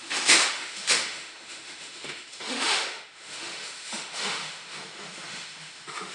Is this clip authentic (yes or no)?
no